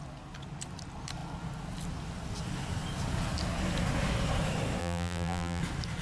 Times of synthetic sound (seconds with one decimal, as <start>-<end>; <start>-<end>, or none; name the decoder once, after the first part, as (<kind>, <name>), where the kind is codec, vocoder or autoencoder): 4.8-5.6 (vocoder, BigVGAN v2)